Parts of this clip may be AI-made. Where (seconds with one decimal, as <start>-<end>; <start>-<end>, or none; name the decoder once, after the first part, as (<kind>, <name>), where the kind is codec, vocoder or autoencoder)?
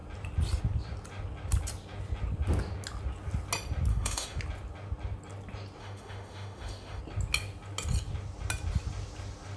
3.9-4.4 (autoencoder, DAC-VAE); 5.8-7.0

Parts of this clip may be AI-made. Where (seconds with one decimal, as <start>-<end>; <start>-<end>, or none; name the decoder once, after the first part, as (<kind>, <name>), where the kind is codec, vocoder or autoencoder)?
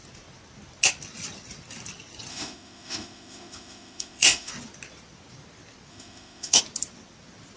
2.3-4.5 (autoencoder, DAC-VAE); 5.9-6.6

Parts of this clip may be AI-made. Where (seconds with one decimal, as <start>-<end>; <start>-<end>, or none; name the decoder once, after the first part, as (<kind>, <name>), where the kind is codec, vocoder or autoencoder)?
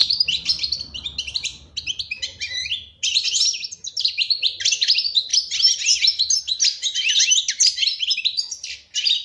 none